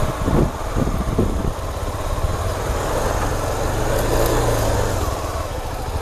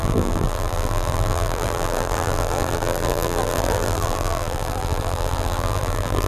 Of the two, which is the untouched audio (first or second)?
first